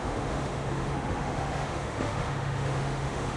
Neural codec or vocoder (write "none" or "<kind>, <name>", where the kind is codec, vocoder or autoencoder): autoencoder, DAC-VAE